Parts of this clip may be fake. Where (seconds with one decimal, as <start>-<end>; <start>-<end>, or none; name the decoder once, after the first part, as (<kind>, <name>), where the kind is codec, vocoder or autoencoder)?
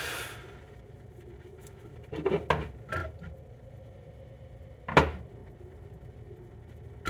none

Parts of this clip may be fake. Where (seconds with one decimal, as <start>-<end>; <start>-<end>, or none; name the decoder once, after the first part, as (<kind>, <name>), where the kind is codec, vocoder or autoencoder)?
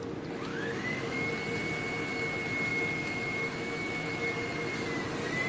0.5-1.3 (autoencoder, DAC-VAE); 2.7-4.2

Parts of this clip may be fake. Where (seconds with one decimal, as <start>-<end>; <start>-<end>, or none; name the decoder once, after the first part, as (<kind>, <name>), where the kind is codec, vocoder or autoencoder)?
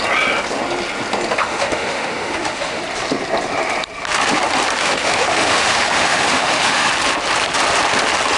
1.4-2.8 (autoencoder, DAC-VAE); 4.8-6.9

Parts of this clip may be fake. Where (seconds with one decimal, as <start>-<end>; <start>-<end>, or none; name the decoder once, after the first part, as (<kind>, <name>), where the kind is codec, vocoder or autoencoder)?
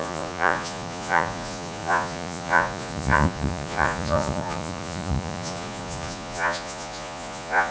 0.0-7.7 (vocoder, Vocos)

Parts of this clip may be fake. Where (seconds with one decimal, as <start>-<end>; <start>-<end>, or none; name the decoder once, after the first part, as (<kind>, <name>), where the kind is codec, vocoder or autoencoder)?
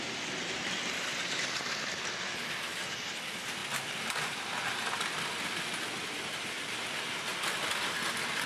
none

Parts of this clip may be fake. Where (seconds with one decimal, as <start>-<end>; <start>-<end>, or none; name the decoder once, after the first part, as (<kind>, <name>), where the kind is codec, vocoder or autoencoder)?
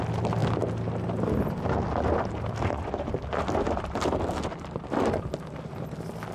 none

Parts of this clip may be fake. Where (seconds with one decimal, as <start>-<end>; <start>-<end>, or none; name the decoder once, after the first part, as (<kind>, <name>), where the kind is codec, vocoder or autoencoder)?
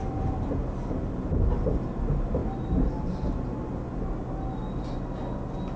2.4-3.1 (vocoder, BigVGAN v2)